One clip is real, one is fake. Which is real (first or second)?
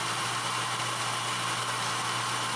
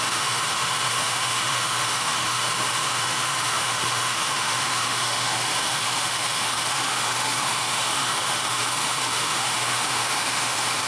first